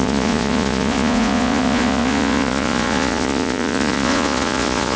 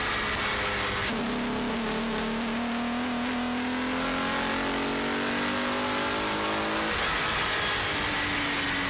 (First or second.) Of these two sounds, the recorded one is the second